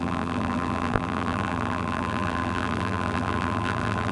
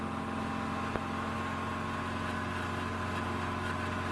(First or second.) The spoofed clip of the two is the first